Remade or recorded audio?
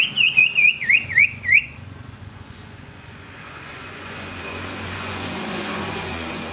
remade